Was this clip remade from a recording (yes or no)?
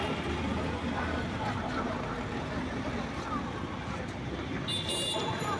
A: no